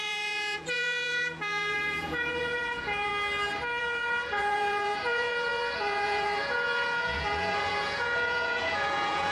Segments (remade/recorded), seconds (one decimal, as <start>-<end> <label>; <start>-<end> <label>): 0.0-3.1 remade; 3.1-3.8 recorded; 3.8-9.3 remade